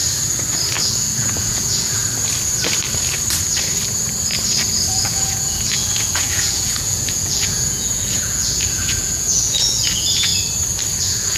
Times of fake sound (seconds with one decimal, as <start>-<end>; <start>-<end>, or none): 0.8-2.0; 4.9-10.3; 11.0-11.4